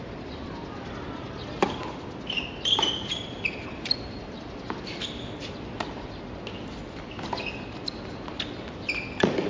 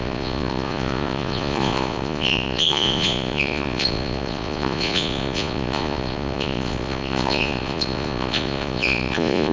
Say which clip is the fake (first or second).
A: second